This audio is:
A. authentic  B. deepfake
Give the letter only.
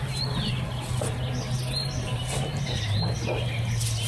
A